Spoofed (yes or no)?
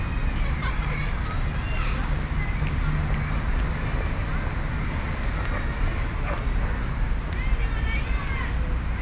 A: no